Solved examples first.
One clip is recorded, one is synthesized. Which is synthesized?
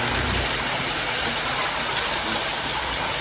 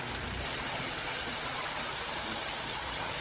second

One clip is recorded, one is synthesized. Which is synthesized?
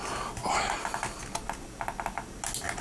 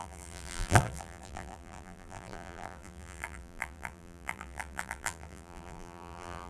second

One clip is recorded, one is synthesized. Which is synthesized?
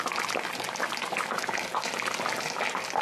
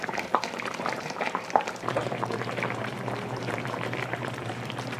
second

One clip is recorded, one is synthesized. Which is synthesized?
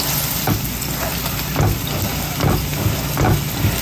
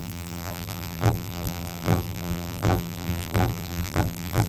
second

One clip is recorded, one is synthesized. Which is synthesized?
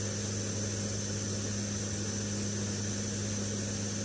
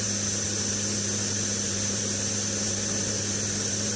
second